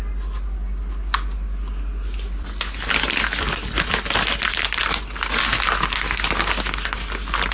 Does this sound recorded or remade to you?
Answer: recorded